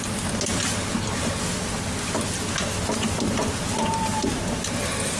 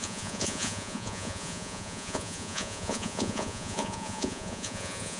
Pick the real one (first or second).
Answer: first